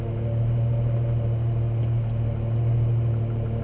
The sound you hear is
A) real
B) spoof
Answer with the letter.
A